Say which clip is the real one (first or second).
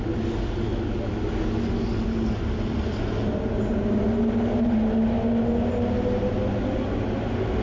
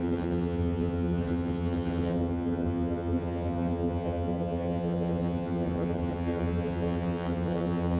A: first